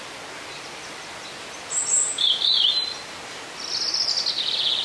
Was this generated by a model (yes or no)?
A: no